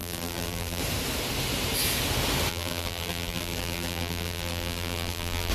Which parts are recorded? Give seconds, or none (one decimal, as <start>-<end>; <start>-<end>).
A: 0.8-2.5